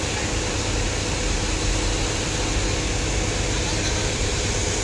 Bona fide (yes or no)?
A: yes